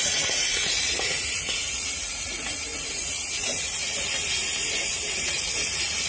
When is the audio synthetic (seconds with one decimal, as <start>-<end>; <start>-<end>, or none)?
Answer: 0.0-6.1